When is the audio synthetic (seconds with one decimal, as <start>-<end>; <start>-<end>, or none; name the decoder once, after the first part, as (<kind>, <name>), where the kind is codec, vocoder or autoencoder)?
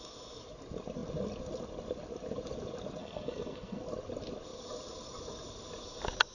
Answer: 3.0-3.8 (codec, SNAC)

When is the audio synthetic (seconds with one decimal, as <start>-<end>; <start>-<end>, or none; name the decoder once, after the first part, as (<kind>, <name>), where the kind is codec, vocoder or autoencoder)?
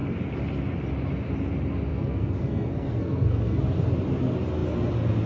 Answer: 1.9-3.6 (codec, SNAC)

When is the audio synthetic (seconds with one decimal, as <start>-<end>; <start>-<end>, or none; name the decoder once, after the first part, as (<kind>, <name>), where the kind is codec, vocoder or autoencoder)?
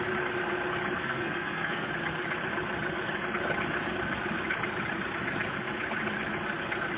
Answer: 1.0-1.9 (codec, SNAC)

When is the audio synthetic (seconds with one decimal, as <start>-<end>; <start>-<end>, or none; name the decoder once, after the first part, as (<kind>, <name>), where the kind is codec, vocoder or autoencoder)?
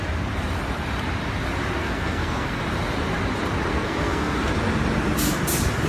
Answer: 1.8-2.6 (codec, SNAC); 3.7-4.5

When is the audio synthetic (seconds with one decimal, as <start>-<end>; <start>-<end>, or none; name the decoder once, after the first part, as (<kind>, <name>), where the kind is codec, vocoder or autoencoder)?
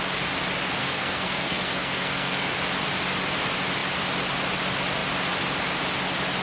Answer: 0.8-2.5 (codec, SNAC)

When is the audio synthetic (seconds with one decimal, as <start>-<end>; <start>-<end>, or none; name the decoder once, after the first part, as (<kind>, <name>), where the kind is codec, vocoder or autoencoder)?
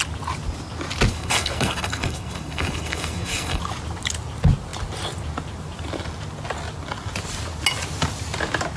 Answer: 1.1-3.6 (codec, SNAC)